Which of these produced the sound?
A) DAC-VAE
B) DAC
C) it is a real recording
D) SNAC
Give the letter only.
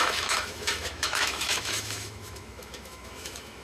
A